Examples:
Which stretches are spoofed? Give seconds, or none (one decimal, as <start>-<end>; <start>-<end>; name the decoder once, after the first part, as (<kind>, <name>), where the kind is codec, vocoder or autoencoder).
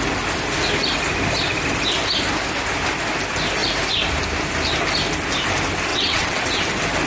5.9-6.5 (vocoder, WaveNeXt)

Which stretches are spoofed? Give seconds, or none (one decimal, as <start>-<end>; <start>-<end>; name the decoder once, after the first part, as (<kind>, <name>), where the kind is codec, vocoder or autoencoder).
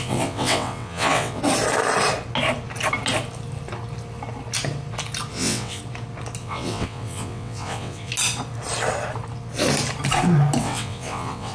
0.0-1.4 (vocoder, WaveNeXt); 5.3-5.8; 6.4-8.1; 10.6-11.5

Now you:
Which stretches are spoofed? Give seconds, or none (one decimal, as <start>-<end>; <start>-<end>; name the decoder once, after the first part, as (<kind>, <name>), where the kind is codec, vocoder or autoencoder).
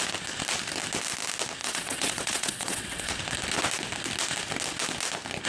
1.6-3.1 (vocoder, WaveNeXt)